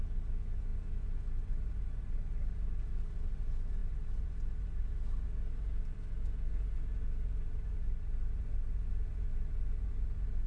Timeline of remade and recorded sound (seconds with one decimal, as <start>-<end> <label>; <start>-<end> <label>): 0.0-10.5 recorded